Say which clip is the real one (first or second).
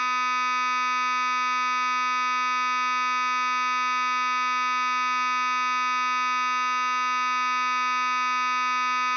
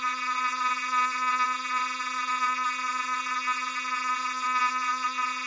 first